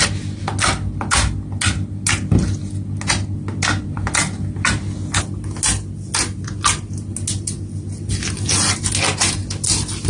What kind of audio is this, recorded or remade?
recorded